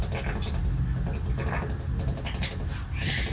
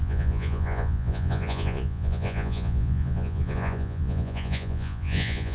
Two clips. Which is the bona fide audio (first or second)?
first